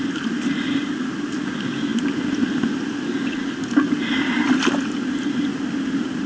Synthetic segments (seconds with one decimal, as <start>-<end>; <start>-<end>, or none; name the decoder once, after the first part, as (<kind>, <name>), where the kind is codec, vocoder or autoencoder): none